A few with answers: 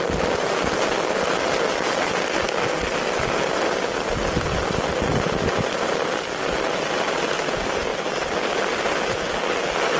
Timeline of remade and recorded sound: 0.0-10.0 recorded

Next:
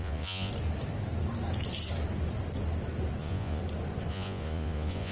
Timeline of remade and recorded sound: 0.0-0.5 remade; 0.5-3.2 recorded; 3.2-3.6 remade; 3.6-4.1 recorded; 4.1-5.1 remade

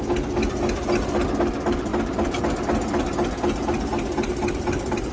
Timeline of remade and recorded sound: 0.0-5.1 recorded

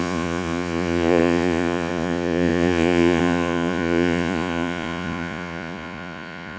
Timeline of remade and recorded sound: 0.0-6.6 remade

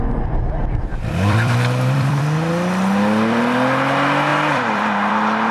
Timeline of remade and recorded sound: 0.0-0.9 recorded; 0.9-2.2 remade; 2.2-4.3 recorded; 4.3-5.1 remade; 5.1-5.5 recorded